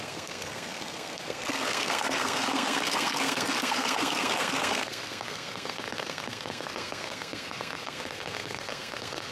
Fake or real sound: fake